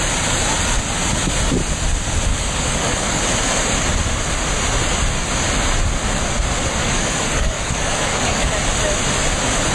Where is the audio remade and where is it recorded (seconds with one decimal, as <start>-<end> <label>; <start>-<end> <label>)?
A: 0.0-2.3 recorded; 2.3-3.2 remade; 3.2-6.8 recorded; 6.8-8.5 remade; 8.5-9.7 recorded